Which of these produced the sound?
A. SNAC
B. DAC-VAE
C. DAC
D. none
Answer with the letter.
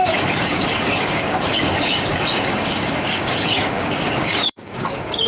C